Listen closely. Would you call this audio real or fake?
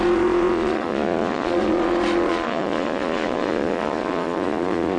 fake